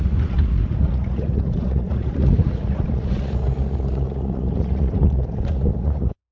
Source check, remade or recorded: remade